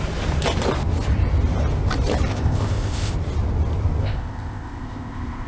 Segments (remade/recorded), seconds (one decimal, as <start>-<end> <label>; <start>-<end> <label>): 0.0-2.3 recorded; 2.3-3.1 remade; 3.1-4.0 recorded; 4.0-5.5 remade